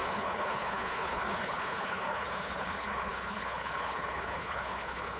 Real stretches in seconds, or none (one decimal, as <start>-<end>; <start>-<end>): none